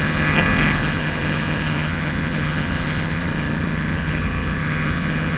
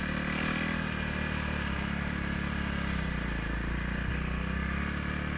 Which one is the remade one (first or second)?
first